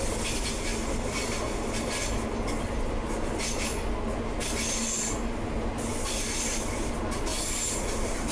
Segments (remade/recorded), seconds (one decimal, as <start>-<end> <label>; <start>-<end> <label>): 0.0-0.7 recorded; 0.7-1.7 remade; 1.7-7.3 recorded; 7.3-8.3 remade